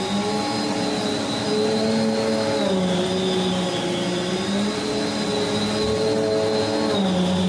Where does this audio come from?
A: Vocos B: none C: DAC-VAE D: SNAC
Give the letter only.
B